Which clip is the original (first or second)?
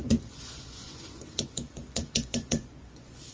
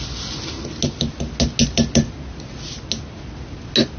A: second